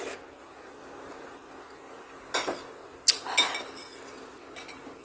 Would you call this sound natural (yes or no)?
yes